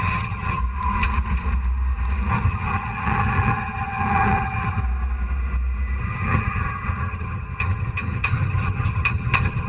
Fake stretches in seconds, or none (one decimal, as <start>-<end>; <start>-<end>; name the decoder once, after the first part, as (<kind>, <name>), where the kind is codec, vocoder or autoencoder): 0.0-0.6 (vocoder, HiFi-GAN); 2.3-4.8; 6.0-9.7